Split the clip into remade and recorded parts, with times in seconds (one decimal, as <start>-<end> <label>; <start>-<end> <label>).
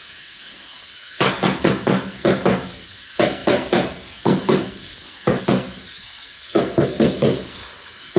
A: 0.0-8.2 remade